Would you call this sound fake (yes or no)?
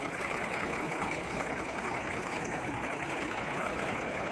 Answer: yes